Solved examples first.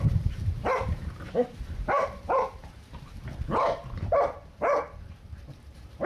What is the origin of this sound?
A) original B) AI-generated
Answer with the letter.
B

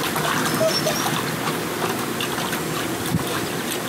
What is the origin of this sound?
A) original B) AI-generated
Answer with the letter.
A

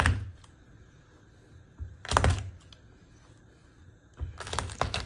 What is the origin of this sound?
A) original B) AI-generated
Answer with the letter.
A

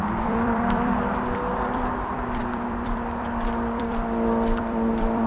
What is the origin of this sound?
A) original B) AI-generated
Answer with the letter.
B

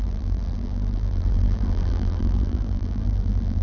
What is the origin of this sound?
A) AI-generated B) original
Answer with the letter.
A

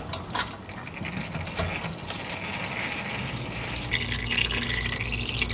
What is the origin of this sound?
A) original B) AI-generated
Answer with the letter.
A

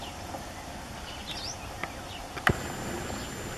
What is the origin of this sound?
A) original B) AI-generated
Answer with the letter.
A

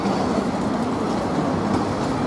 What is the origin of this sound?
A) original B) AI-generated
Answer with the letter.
A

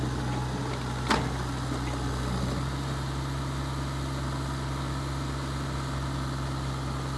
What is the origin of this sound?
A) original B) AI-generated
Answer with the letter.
A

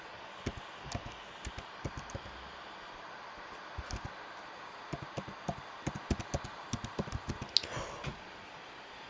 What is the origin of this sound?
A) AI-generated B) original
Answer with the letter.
B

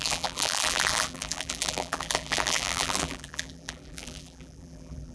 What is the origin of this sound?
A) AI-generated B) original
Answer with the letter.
A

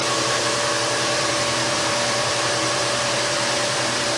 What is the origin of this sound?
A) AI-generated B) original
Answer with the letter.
A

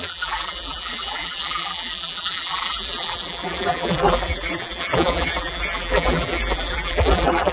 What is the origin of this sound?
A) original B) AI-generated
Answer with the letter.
B